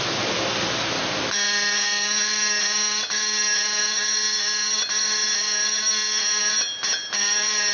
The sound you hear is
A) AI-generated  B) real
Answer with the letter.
B